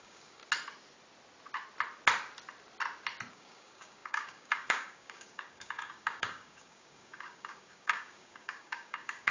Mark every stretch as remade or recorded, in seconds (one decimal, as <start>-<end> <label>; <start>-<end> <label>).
0.0-0.4 remade; 0.4-3.3 recorded; 3.3-9.3 remade